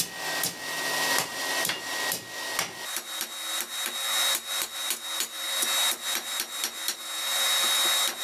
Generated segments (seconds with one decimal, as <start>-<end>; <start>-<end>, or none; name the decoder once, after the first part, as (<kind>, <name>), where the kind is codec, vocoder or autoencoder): none